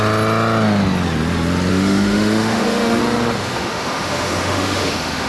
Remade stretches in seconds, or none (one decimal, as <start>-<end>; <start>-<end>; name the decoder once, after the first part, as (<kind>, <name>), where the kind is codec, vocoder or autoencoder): 1.7-3.0 (autoencoder, DAC-VAE); 3.4-5.3